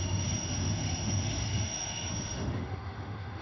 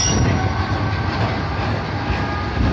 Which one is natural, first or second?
second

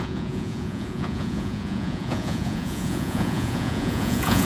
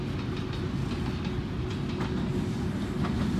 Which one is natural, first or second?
second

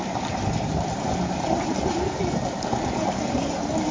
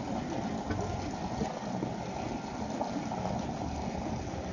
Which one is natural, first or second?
second